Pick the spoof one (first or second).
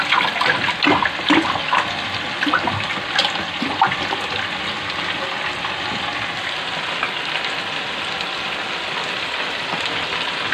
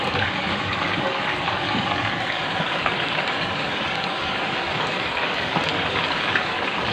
second